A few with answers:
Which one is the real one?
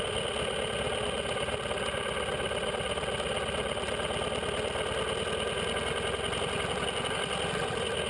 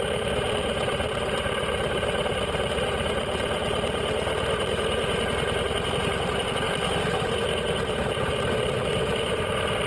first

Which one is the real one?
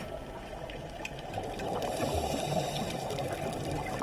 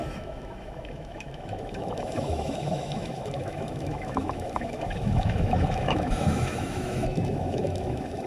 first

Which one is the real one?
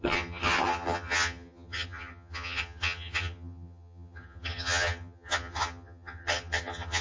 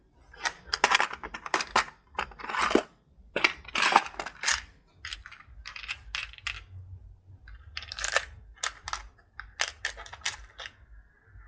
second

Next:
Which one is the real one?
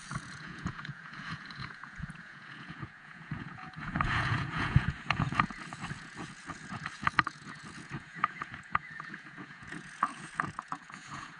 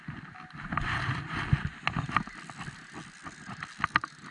second